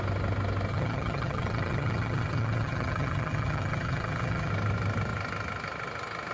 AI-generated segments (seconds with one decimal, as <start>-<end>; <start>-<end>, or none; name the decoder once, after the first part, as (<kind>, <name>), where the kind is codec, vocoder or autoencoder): 0.7-4.5 (vocoder, HiFi-GAN)